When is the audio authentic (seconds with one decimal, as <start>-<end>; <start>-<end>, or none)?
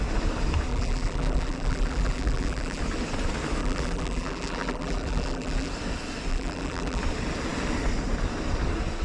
0.0-0.7; 2.8-3.6; 5.7-6.3; 7.0-9.0